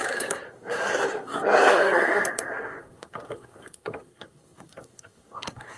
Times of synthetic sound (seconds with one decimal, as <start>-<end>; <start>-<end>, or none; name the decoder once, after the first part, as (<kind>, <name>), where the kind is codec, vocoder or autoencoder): 0.0-5.8 (codec, SNAC)